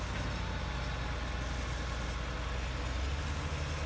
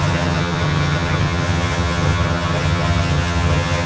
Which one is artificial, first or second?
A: second